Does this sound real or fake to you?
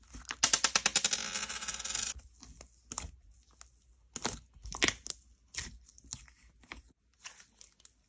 real